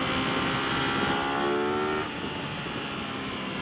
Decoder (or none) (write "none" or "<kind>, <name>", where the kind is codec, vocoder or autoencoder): none